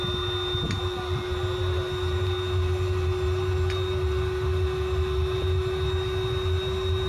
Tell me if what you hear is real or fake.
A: real